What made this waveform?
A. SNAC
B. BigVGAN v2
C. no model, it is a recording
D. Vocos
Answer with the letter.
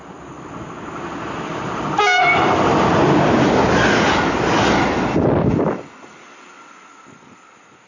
C